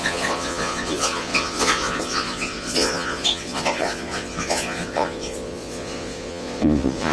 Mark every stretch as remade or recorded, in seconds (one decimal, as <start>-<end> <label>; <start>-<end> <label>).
0.0-7.1 remade